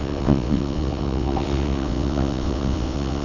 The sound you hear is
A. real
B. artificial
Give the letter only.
B